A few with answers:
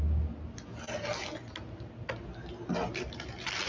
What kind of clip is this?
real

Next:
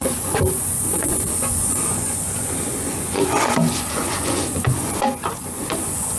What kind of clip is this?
fake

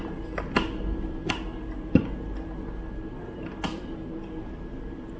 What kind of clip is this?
real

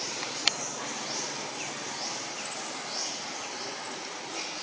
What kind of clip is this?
real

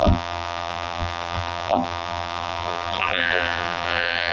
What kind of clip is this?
fake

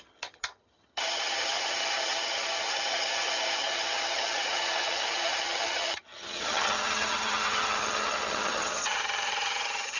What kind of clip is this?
fake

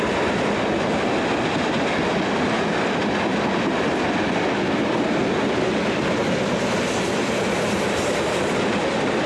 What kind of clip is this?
real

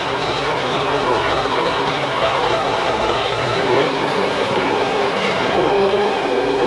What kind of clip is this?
fake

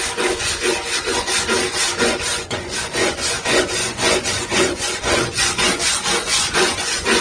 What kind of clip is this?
fake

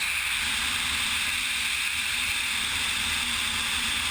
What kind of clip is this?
real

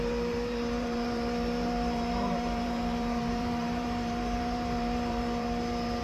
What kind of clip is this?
fake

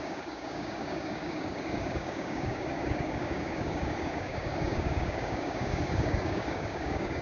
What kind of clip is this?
fake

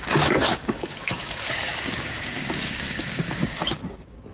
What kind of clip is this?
fake